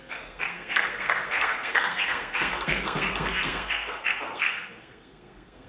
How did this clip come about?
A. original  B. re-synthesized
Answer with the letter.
B